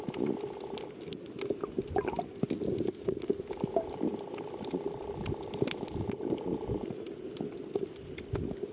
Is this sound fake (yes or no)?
no